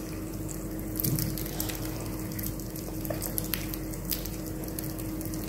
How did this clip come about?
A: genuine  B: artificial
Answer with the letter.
A